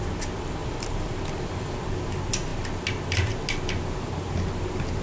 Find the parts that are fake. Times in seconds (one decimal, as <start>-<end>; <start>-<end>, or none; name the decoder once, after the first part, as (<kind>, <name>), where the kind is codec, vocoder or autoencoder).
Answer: 0.6-1.2 (vocoder, BigVGAN v2)